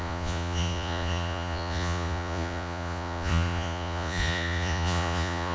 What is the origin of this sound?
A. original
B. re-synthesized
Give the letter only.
B